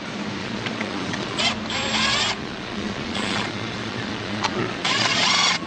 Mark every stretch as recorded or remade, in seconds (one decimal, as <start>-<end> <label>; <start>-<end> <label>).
0.0-0.4 recorded; 0.4-1.4 remade; 1.4-2.4 recorded; 2.4-5.7 remade